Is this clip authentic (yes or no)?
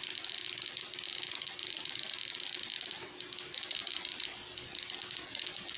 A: yes